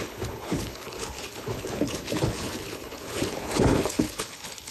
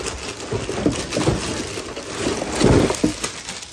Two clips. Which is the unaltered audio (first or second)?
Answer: second